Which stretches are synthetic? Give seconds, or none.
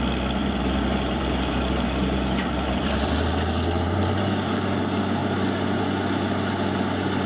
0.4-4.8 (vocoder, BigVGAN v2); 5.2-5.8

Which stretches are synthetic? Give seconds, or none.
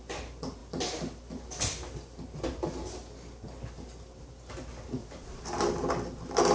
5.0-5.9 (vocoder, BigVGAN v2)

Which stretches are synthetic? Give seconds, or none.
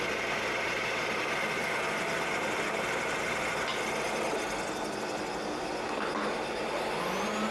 none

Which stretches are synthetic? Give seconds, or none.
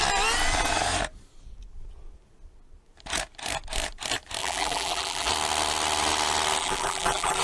4.4-5.3 (vocoder, BigVGAN v2); 6.6-7.4